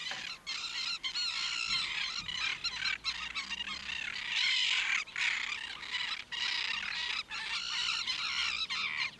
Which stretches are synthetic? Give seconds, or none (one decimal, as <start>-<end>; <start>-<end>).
7.6-8.2